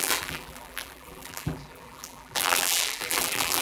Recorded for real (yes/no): no